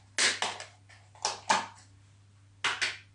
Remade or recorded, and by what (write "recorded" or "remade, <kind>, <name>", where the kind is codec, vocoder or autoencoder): recorded